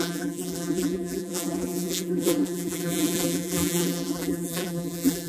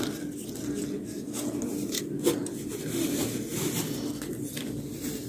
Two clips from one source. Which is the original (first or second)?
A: second